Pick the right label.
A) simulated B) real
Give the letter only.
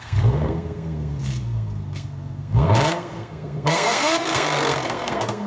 A